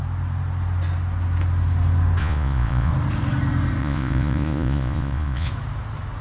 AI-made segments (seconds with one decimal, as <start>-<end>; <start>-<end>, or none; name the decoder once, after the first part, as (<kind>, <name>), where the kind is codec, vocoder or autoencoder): 2.2-2.9 (vocoder, Vocos); 3.8-5.5